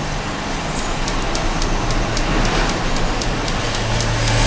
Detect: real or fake real